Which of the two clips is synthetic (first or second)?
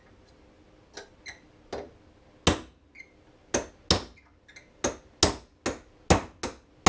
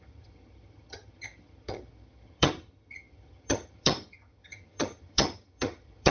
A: second